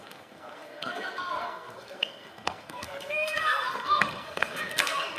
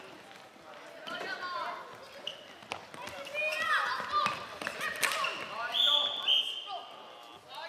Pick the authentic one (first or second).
second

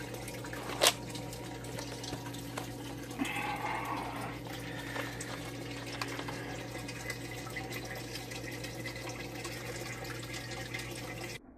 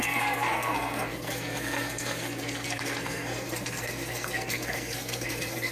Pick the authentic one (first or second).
first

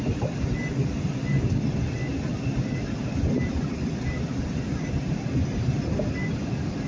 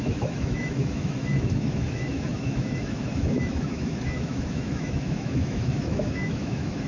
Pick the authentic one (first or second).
first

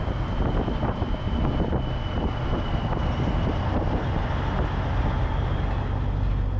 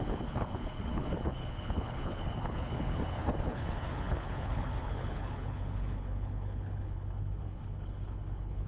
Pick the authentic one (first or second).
first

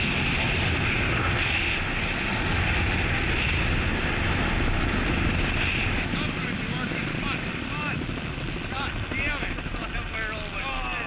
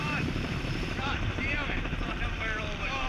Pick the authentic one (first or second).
first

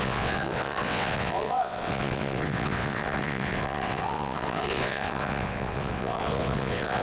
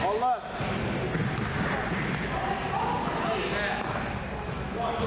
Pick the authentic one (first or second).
second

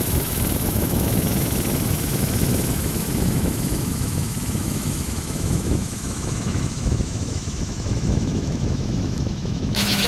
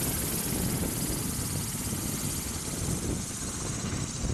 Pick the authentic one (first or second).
second